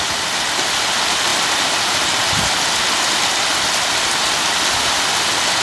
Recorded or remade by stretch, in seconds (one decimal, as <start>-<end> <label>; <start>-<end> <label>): 0.0-5.6 recorded